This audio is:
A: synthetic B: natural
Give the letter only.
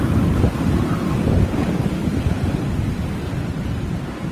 B